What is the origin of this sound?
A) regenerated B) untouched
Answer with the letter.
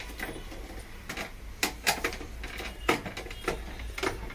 B